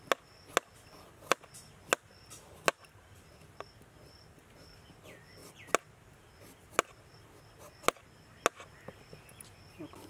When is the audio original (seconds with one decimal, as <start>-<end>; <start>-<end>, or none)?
0.0-10.1